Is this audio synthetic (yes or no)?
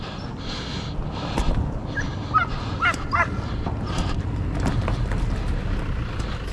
no